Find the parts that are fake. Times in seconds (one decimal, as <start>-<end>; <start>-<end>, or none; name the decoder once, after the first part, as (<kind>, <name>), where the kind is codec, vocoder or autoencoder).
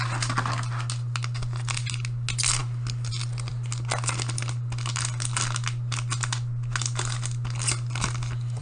none